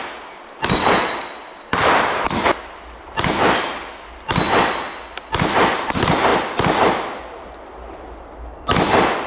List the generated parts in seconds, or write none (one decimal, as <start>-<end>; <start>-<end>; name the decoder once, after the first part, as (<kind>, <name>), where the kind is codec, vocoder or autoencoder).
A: none